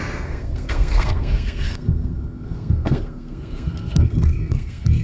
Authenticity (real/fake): fake